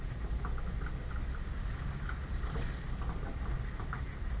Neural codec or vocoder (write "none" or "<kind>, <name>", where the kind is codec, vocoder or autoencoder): none